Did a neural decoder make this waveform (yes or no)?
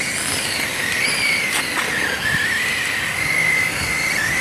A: no